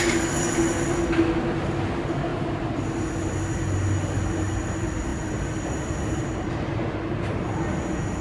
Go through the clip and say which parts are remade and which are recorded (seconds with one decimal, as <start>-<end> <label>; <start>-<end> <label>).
0.0-8.2 recorded